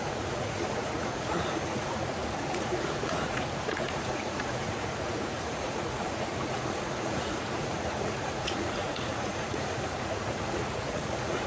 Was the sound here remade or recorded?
remade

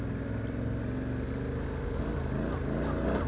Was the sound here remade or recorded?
recorded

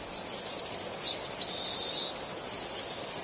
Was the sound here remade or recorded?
recorded